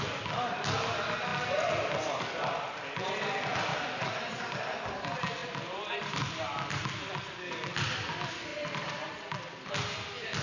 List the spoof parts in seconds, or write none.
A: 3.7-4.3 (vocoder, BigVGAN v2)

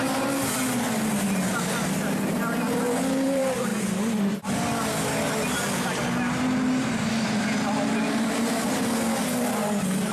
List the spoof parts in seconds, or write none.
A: none

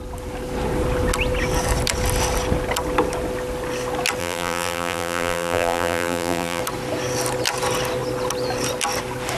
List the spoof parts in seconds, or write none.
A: 4.2-6.6 (vocoder, BigVGAN v2)